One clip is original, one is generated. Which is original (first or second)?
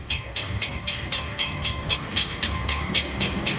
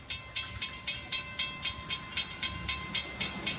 second